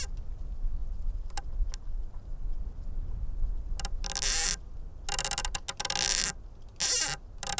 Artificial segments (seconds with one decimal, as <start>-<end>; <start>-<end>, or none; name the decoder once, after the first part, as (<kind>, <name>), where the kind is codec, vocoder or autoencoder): none